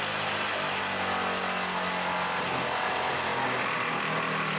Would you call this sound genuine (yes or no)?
yes